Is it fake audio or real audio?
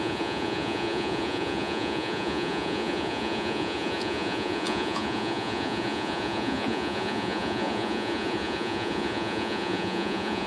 fake